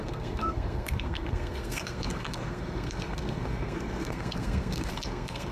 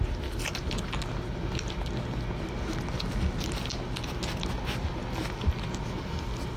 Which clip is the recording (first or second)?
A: second